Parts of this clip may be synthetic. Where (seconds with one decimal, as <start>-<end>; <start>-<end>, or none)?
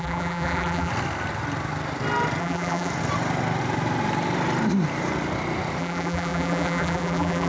0.0-0.9; 2.4-2.9; 5.8-7.5